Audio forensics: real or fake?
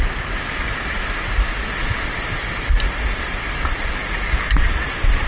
real